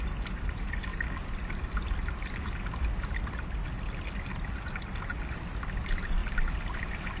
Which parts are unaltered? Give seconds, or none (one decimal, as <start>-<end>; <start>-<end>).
0.0-7.2